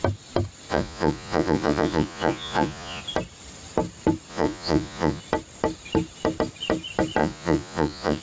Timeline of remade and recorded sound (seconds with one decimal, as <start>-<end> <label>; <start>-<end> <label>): 0.0-0.7 recorded; 0.7-3.0 remade; 3.0-4.3 recorded; 4.3-5.2 remade; 5.2-7.2 recorded; 7.2-8.2 remade